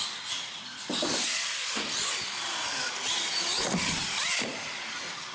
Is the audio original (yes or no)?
yes